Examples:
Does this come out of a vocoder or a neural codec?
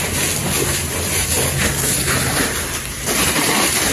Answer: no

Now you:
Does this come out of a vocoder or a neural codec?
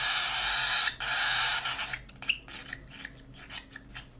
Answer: no